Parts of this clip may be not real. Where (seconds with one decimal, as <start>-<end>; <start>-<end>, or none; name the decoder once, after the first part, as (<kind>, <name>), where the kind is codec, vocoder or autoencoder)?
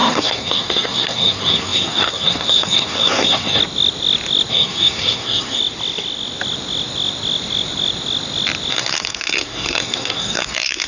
0.0-3.6 (codec, SNAC); 4.5-5.6; 8.7-10.9